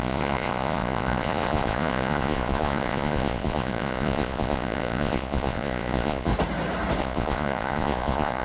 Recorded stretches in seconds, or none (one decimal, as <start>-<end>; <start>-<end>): 6.3-7.0